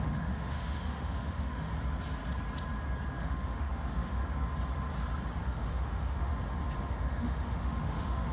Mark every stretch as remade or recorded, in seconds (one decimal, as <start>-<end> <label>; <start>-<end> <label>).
0.0-1.7 remade; 1.7-3.2 recorded; 3.2-4.2 remade; 4.2-5.4 recorded; 5.4-6.3 remade; 6.3-6.8 recorded; 6.8-8.3 remade